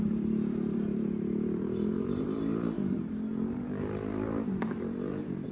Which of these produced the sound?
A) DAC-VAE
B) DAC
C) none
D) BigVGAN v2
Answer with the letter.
D